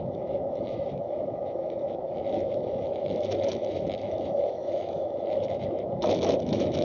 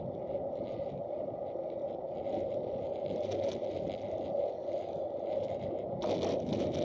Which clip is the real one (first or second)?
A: second